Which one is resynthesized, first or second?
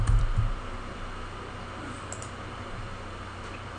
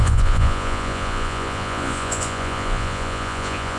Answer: second